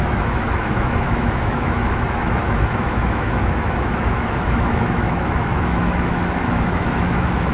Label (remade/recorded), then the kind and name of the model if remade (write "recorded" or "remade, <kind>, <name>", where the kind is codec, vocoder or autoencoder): remade, autoencoder, DAC-VAE